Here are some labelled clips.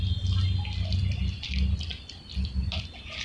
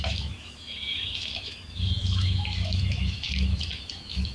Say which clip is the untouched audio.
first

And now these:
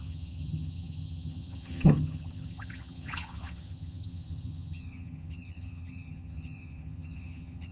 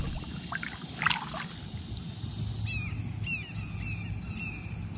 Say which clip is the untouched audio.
second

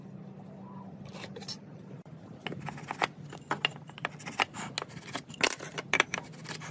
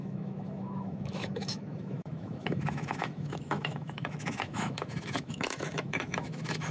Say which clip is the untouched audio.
first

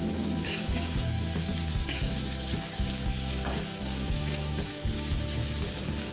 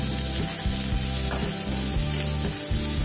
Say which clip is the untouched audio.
second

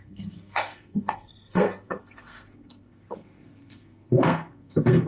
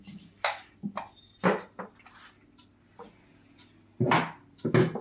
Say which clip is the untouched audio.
second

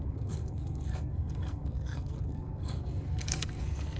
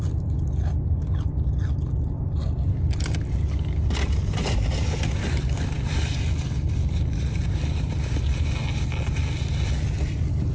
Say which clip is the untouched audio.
second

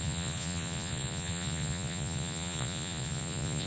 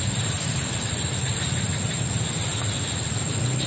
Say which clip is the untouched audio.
second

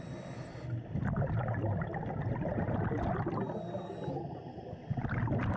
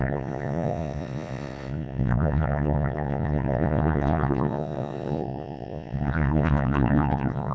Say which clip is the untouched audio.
first